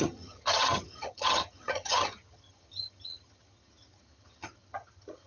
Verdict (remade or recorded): remade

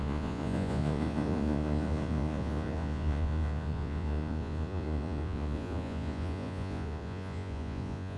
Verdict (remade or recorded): remade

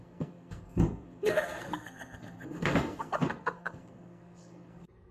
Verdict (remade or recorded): remade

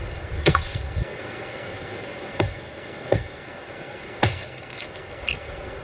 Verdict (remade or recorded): remade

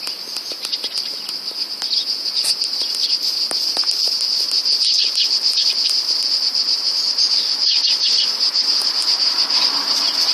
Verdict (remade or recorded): recorded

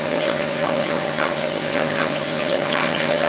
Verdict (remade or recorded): remade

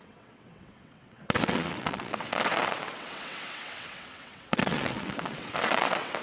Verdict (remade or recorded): remade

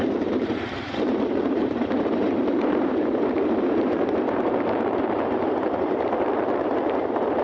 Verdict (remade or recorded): remade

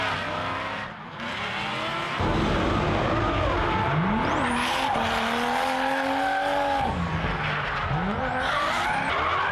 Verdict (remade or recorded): recorded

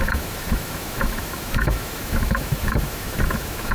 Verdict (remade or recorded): remade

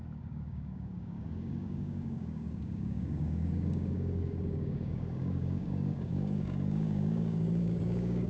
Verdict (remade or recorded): remade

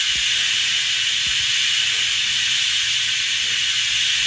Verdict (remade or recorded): recorded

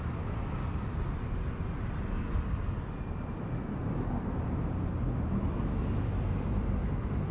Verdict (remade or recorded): recorded